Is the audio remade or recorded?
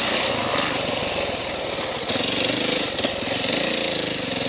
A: recorded